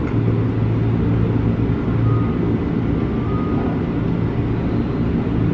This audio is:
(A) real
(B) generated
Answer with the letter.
A